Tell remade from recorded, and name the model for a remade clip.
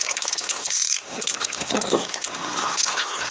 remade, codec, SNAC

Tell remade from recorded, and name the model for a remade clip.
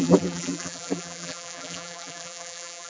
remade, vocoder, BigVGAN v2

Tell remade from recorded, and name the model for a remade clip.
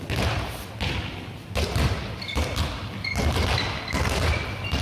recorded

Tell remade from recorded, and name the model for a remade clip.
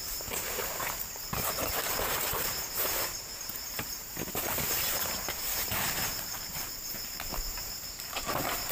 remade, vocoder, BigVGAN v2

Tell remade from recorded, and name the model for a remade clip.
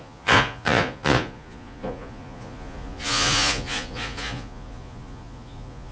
remade, vocoder, Vocos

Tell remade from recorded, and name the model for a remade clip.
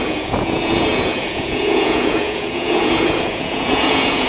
remade, vocoder, Vocos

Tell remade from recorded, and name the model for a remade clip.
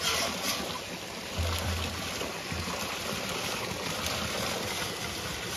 recorded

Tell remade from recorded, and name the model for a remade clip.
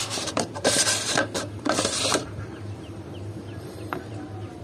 remade, vocoder, BigVGAN v2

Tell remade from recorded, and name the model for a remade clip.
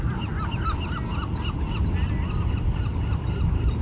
recorded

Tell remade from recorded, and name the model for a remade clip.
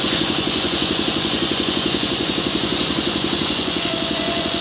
remade, vocoder, Vocos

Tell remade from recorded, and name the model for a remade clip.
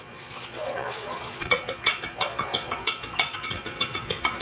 remade, vocoder, Vocos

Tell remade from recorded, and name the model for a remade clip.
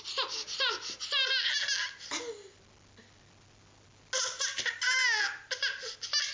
recorded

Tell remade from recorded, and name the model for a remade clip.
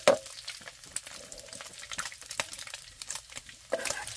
recorded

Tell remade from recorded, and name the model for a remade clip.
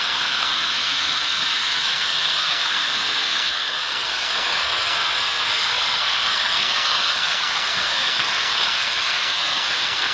remade, codec, SNAC